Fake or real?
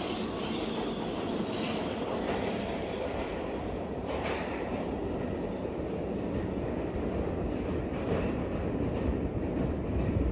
real